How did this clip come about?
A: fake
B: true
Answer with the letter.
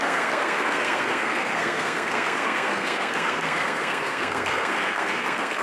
A